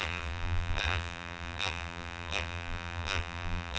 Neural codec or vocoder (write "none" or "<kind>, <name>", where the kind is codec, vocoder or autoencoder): vocoder, BigVGAN v2